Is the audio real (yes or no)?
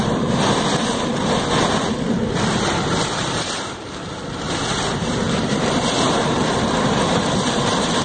no